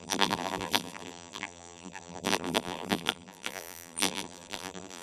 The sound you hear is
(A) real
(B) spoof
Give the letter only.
B